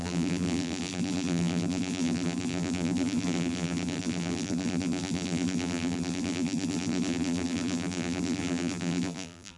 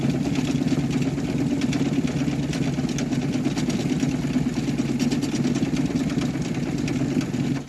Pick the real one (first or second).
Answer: second